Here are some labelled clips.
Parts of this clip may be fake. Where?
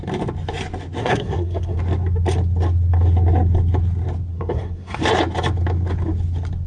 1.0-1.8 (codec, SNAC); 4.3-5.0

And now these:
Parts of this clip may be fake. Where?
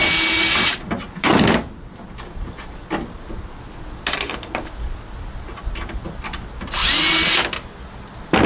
none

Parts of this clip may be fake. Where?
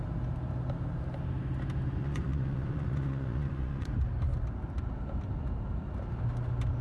2.0-3.9 (vocoder, Vocos)